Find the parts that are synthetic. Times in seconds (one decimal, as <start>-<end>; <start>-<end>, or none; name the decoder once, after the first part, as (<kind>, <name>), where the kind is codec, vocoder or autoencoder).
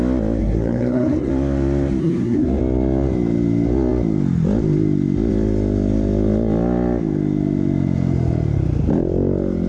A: 0.4-1.3 (codec, SNAC); 2.0-2.6